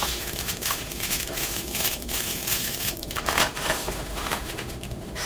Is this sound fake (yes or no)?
yes